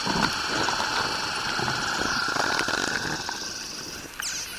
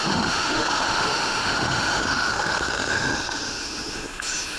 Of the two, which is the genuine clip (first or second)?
first